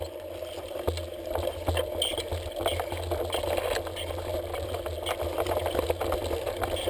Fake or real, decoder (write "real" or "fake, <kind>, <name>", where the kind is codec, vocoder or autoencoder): real